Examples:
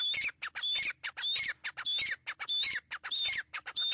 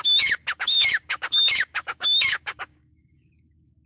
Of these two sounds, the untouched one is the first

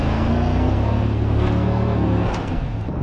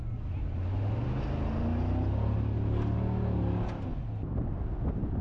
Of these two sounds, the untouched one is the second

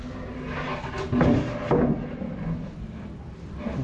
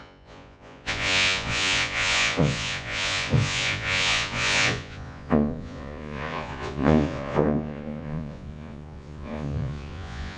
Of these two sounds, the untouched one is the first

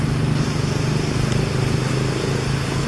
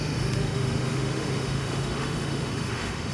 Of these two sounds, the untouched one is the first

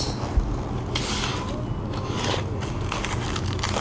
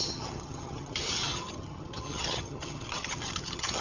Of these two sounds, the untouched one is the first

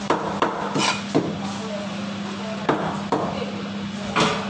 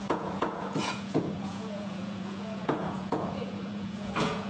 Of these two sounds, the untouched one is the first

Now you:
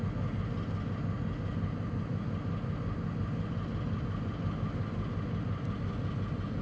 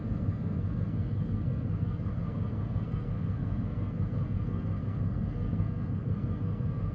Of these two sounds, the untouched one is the first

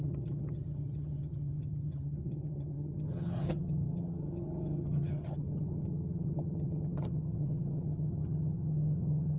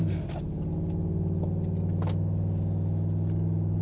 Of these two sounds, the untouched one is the second